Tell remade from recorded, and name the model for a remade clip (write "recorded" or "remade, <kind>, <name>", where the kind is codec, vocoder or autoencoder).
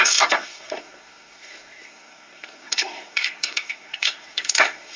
remade, codec, SNAC